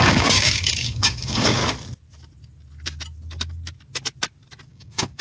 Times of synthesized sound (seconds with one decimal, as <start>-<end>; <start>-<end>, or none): 0.0-1.6; 4.7-5.2